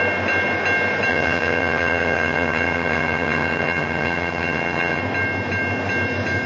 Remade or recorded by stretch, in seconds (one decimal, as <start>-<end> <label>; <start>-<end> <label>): 0.0-1.1 recorded; 1.1-5.0 remade; 5.0-6.5 recorded